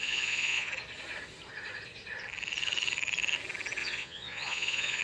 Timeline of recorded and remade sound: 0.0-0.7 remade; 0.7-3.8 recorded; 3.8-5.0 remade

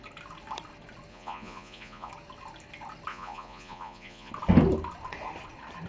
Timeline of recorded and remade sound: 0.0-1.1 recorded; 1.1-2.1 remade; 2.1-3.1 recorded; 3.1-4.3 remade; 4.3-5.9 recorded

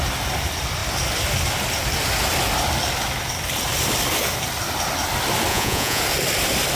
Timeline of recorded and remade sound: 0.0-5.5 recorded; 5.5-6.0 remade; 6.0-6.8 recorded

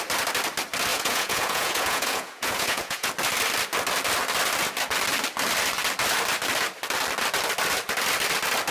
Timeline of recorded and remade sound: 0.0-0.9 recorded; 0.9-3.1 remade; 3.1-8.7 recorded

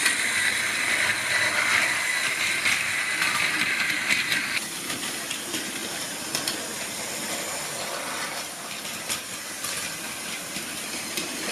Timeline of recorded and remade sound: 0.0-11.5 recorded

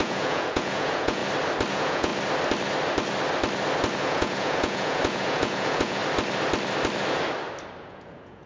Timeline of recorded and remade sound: 0.0-1.2 remade; 1.2-1.7 recorded; 1.7-2.1 remade; 2.1-4.0 recorded; 4.0-6.0 remade; 6.0-7.8 recorded; 7.8-8.5 remade